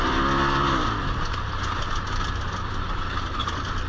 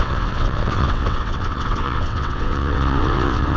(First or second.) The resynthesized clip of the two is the second